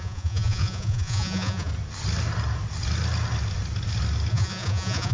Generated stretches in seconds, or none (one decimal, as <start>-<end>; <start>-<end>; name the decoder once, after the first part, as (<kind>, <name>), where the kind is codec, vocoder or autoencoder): 0.0-1.7 (vocoder, Vocos); 4.3-5.1